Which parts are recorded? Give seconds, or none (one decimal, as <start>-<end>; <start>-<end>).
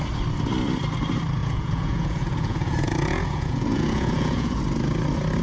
0.0-1.4; 4.6-5.4